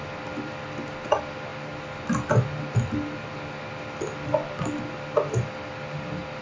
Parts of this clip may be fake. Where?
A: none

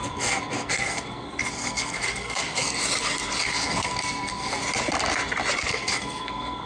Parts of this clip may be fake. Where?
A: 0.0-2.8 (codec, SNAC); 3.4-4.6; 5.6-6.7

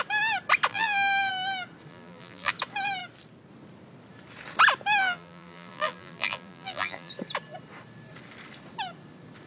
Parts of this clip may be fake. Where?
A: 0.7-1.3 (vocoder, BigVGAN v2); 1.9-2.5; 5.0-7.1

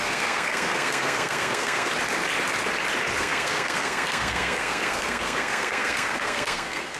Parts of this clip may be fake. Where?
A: 0.0-1.9 (codec, SNAC); 3.2-7.0

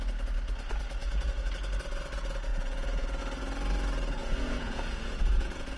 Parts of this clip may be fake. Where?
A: 1.0-1.5 (vocoder, Vocos); 2.5-3.2; 4.2-5.8